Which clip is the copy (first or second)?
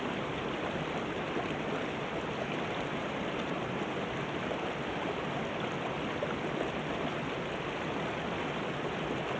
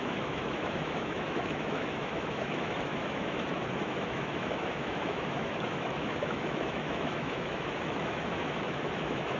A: second